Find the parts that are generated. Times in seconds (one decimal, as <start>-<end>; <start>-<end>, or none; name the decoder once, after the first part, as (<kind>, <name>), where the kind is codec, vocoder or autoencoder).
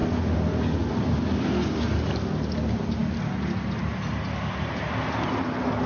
none